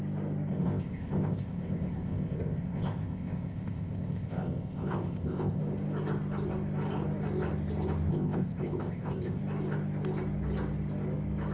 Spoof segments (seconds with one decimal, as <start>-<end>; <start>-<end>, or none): 0.5-5.6; 8.1-9.4